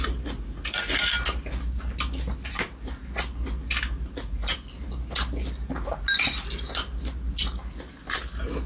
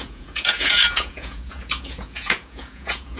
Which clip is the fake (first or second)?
second